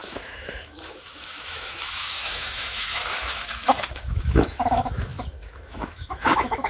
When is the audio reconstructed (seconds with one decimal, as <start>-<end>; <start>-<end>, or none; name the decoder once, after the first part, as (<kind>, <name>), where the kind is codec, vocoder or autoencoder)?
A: 0.0-6.7 (autoencoder, DAC-VAE)